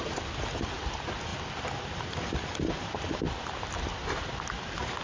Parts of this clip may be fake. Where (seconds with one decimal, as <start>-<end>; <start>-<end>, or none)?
none